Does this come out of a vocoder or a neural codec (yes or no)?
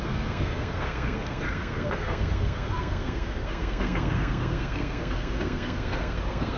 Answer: yes